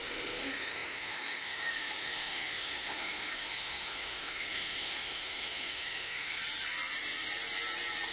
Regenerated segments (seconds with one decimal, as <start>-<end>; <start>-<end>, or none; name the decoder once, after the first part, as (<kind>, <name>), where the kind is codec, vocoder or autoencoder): 0.0-6.4 (autoencoder, DAC-VAE)